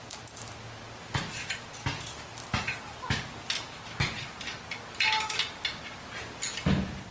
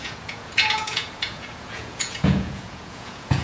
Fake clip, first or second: second